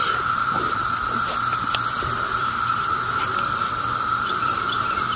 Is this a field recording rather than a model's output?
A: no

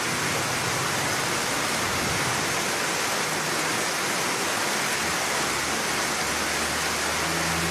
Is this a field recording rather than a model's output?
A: yes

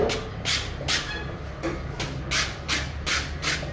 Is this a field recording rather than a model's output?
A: yes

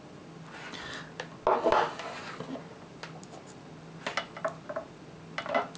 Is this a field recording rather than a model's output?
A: yes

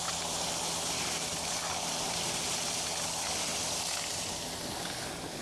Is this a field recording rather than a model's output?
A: yes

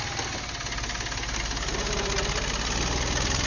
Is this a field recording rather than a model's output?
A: yes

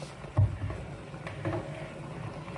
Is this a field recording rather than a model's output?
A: yes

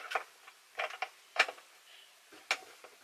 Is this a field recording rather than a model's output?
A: yes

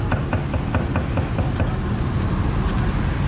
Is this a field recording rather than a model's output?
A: yes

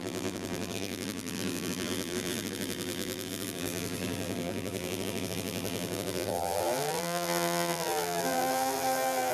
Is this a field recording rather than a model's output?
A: no